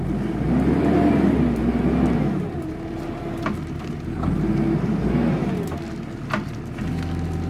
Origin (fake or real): real